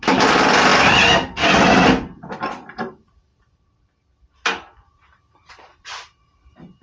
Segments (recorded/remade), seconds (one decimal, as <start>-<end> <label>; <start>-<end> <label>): 0.0-0.7 remade; 0.7-1.6 recorded; 1.6-3.3 remade; 3.3-5.5 recorded; 5.5-6.8 remade